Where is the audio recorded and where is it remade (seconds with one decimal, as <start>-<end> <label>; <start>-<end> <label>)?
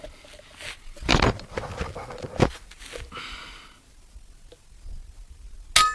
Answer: 0.0-5.9 recorded